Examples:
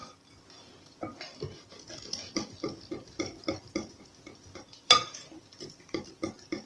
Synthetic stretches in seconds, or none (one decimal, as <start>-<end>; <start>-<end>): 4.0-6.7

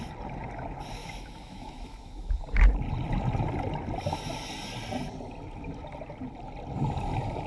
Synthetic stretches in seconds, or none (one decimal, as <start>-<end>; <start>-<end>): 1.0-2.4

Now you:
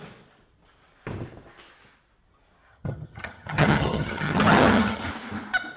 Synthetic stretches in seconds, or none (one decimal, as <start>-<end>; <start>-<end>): 2.7-5.1